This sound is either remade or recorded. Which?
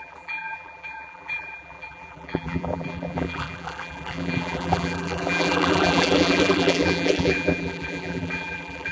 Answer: remade